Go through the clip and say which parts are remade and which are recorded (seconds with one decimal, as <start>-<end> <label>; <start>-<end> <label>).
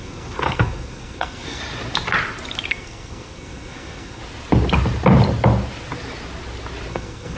0.0-1.6 remade; 1.6-2.7 recorded; 2.7-4.2 remade; 4.2-6.9 recorded; 6.9-7.4 remade